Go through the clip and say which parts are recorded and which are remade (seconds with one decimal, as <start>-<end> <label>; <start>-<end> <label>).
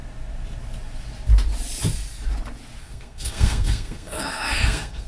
0.0-2.8 recorded; 2.8-5.1 remade